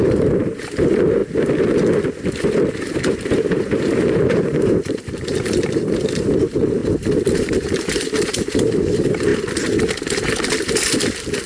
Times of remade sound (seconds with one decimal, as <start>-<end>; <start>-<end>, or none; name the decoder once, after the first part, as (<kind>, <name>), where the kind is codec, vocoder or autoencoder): 0.0-1.2 (vocoder, BigVGAN v2); 2.7-6.8; 7.5-9.3